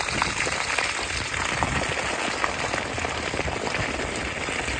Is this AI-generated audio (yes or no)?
no